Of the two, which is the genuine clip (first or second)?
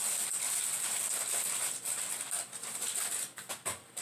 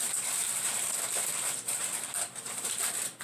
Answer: first